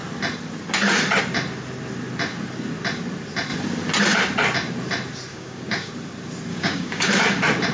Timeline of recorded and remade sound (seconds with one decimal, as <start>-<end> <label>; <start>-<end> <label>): 0.0-5.3 recorded; 5.3-5.9 remade; 5.9-6.5 recorded; 6.5-7.1 remade; 7.1-7.7 recorded